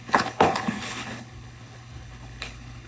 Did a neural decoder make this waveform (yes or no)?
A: yes